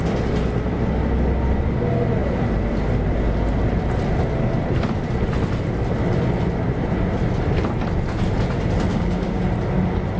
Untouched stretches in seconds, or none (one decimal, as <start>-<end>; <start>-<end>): 0.0-8.9; 9.4-10.2